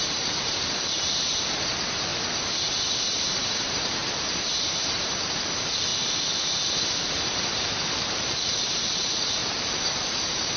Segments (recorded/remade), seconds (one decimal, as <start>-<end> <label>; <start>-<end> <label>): 0.0-2.1 remade; 2.1-3.0 recorded; 3.0-4.0 remade; 4.0-4.6 recorded; 4.6-10.6 remade